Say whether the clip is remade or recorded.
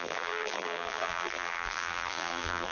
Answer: remade